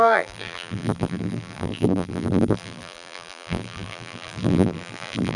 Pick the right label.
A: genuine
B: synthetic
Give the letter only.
B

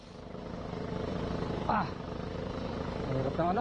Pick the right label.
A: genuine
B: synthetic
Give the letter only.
B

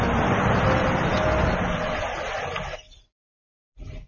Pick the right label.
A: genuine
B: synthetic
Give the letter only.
A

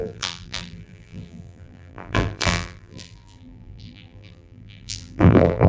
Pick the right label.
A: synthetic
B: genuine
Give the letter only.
A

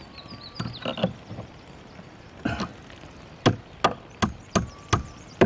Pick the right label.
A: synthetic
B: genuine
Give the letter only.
B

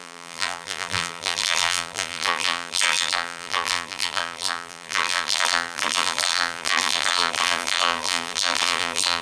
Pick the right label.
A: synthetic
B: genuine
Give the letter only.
A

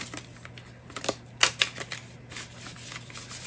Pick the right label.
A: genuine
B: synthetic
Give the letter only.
A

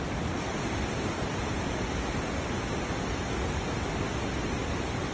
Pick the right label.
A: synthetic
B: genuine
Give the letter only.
B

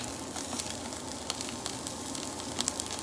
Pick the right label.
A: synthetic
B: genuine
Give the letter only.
B